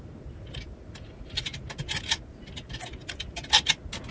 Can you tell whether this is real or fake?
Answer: real